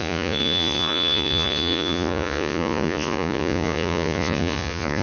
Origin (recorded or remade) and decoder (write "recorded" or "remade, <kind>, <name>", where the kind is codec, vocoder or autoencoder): remade, vocoder, Vocos